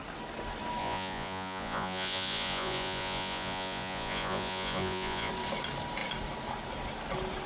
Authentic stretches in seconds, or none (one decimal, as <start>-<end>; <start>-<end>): 0.0-0.8; 5.3-7.5

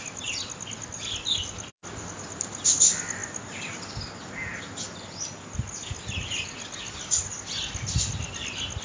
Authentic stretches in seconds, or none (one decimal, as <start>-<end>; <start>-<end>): 0.0-8.8

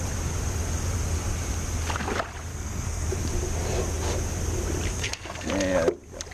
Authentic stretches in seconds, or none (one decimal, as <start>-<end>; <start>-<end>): 0.0-2.5; 3.1-4.9; 5.5-6.3

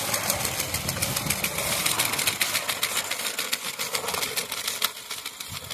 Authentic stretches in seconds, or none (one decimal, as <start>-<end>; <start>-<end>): 0.0-5.7

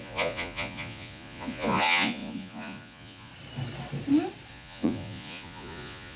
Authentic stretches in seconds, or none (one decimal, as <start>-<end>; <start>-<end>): 3.3-4.5

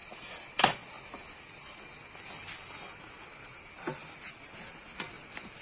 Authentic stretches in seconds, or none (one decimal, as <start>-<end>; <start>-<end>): 0.0-5.6